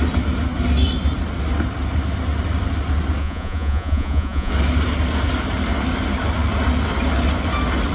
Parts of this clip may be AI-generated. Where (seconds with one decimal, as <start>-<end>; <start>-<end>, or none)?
3.2-4.5